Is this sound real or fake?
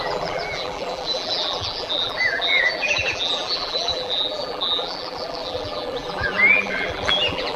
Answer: fake